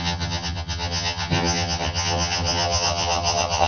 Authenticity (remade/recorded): remade